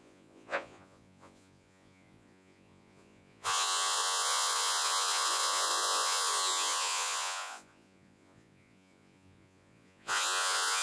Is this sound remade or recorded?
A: remade